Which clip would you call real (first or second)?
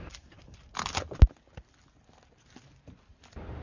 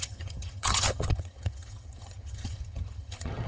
first